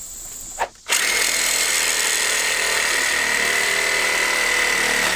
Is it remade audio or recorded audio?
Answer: recorded